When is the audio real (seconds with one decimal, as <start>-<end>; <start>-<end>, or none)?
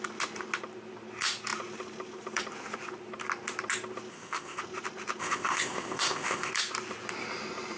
0.0-4.1; 4.6-5.2; 6.5-7.8